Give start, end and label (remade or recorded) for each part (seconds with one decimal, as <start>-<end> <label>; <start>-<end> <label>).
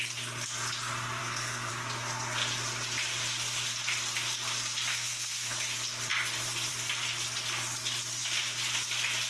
0.0-1.2 recorded; 1.2-1.7 remade; 1.7-4.9 recorded; 4.9-5.5 remade; 5.5-9.3 recorded